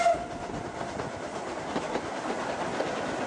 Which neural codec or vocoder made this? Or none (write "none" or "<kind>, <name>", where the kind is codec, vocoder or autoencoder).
none